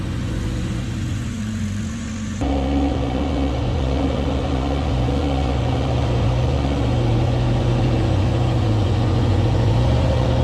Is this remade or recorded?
remade